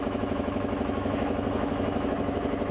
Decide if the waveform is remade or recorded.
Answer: remade